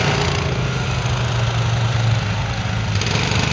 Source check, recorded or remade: recorded